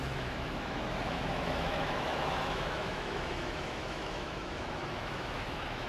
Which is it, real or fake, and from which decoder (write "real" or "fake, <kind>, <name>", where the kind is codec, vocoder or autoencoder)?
fake, autoencoder, DAC-VAE